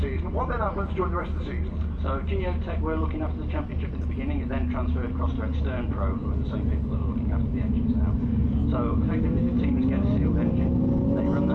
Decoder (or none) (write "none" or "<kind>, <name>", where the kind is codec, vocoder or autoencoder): none